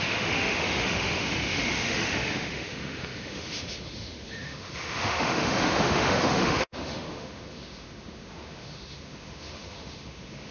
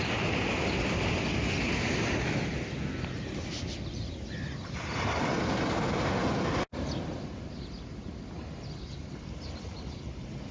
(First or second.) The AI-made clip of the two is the first